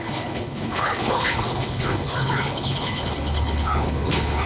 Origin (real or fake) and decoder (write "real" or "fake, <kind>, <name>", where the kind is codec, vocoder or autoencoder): fake, codec, HILCodec